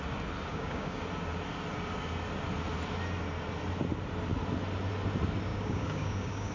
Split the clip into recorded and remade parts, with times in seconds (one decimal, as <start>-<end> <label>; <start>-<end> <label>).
0.0-0.5 recorded; 0.5-1.0 remade; 1.0-5.5 recorded; 5.5-6.5 remade